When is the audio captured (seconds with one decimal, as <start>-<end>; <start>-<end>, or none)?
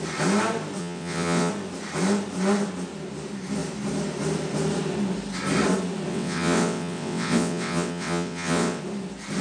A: 0.0-0.8; 1.5-6.1; 8.8-9.4